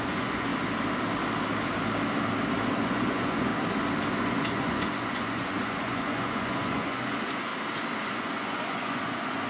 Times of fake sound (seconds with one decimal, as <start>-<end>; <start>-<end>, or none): 0.0-0.5; 2.8-3.5; 4.2-7.5; 8.0-9.5